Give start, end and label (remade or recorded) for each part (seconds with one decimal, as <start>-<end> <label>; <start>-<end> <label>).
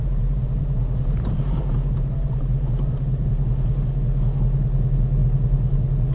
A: 0.0-3.7 remade; 3.7-6.1 recorded